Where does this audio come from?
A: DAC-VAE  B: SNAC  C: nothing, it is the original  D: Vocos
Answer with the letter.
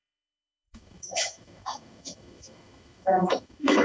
A